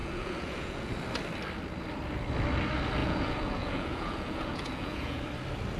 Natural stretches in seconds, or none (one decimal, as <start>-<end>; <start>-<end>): 0.9-3.0; 5.2-5.8